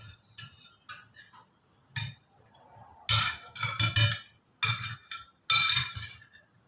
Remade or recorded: recorded